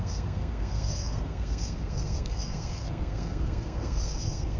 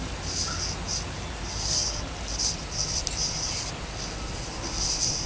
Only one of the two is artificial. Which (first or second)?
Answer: first